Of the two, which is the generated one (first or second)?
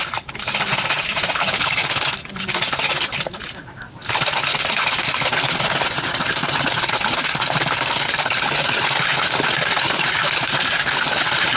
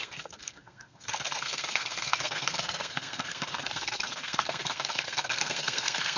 second